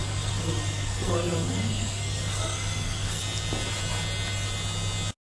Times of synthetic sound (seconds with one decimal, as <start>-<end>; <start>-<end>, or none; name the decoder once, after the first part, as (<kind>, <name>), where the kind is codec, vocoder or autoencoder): 0.0-3.2 (codec, SNAC)